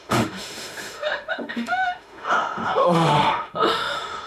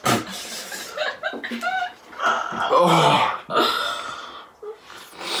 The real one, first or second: second